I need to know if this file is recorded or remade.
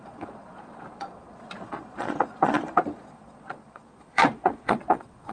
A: remade